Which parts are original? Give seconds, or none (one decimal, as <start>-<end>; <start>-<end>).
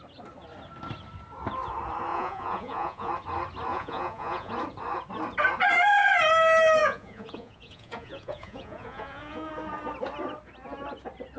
0.0-2.1; 3.1-3.7; 4.5-6.8; 9.5-11.4